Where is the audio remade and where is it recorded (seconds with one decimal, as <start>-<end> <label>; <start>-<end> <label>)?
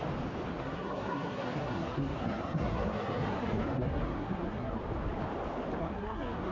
0.0-0.5 recorded; 0.5-4.8 remade; 4.8-5.8 recorded; 5.8-6.5 remade